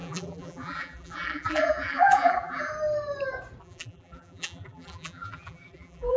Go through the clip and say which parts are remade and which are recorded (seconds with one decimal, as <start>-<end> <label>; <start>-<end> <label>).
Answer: 0.0-2.7 remade; 2.7-3.6 recorded; 3.6-6.2 remade